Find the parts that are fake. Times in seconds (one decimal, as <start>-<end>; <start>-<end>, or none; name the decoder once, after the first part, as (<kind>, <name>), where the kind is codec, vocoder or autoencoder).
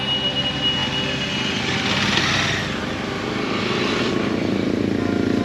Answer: none